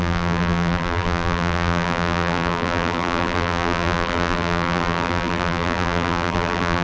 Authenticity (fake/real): fake